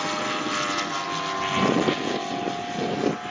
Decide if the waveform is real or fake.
real